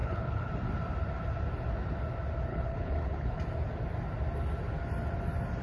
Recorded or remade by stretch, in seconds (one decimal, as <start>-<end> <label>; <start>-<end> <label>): 0.0-0.5 remade; 0.5-2.5 recorded; 2.5-3.4 remade; 3.4-5.6 recorded